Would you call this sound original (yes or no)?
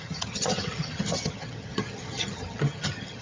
no